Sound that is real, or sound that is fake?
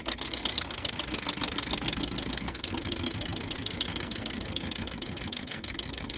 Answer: fake